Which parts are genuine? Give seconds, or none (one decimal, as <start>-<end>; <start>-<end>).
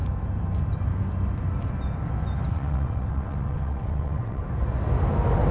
0.0-2.5; 4.4-5.5